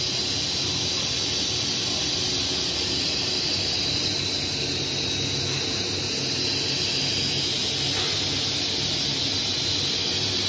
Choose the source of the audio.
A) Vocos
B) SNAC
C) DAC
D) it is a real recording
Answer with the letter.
D